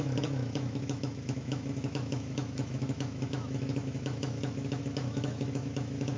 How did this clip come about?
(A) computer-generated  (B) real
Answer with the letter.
A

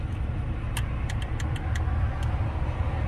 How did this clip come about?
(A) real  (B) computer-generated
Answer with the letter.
A